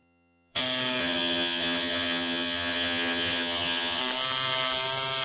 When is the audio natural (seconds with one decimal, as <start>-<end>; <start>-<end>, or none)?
0.6-1.0; 4.0-5.2